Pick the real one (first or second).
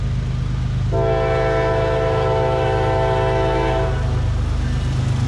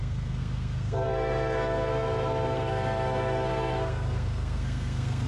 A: first